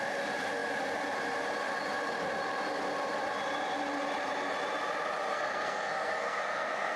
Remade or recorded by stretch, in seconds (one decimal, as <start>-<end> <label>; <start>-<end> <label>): 0.0-5.3 recorded; 5.3-7.0 remade